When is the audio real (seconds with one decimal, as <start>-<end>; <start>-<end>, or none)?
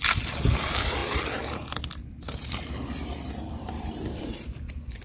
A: 0.0-5.0